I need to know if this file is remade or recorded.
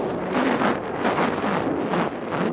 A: recorded